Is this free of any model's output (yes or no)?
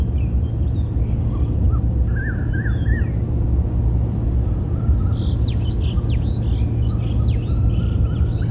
yes